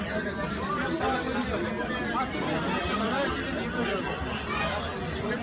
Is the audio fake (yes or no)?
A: no